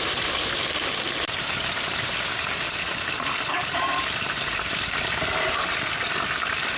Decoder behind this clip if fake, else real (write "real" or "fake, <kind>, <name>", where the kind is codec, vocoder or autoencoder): fake, vocoder, BigVGAN v2